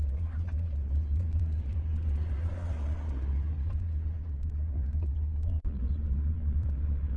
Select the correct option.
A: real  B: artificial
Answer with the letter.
B